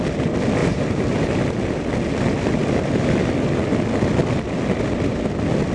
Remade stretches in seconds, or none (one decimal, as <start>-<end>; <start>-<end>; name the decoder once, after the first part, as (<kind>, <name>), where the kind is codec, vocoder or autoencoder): 0.6-1.3 (vocoder, BigVGAN v2)